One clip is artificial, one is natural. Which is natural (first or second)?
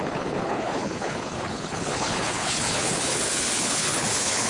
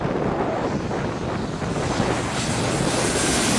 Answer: second